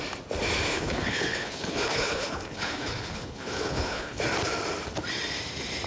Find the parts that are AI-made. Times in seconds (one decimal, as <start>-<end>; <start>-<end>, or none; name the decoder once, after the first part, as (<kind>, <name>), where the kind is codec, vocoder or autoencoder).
0.7-4.2 (codec, HILCodec)